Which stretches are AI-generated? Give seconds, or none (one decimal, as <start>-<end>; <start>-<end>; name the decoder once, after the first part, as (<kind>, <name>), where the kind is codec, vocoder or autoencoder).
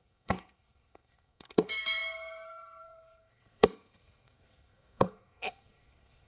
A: 0.0-6.3 (codec, SNAC)